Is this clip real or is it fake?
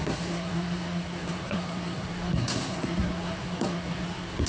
fake